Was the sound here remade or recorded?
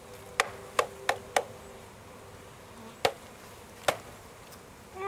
recorded